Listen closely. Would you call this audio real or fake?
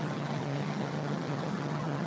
fake